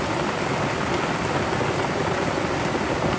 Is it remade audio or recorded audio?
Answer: recorded